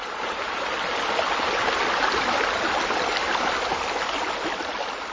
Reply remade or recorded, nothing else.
recorded